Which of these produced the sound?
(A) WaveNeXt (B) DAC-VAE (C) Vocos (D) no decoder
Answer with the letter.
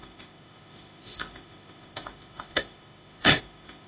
B